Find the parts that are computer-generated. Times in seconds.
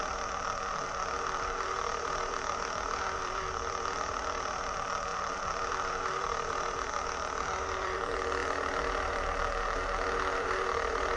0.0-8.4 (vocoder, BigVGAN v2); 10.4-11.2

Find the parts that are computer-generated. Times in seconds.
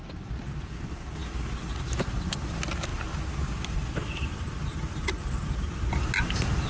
none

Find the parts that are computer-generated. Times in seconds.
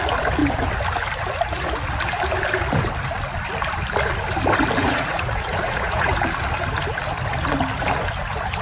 4.8-6.1 (vocoder, Vocos)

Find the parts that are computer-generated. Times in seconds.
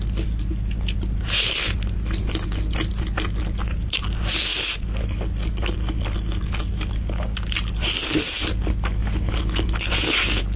none